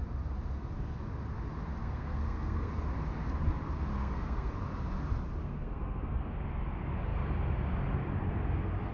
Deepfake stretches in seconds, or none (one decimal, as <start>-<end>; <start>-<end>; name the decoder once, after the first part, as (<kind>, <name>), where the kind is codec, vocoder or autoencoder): 1.8-2.7 (codec, SNAC); 3.9-4.5; 5.4-6.2